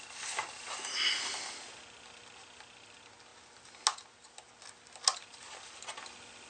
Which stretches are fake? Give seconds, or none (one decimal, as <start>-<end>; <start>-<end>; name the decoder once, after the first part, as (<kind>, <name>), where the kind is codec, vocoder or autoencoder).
none